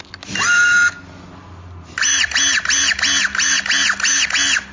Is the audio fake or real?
real